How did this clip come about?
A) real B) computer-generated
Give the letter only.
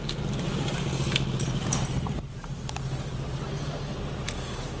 A